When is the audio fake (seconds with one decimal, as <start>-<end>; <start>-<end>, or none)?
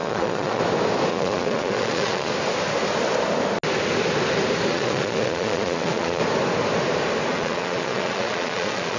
0.0-0.6; 1.1-2.3; 4.7-6.2; 7.3-9.0